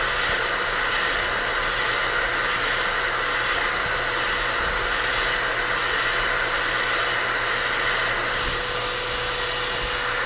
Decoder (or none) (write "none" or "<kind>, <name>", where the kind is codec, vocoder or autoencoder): none